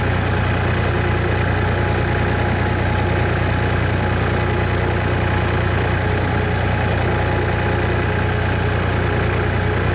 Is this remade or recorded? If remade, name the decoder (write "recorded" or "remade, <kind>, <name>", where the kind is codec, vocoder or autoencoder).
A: recorded